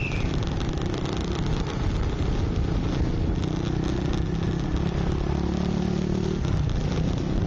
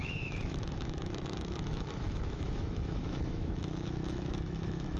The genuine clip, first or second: first